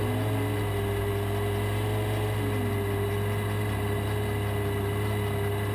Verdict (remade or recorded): recorded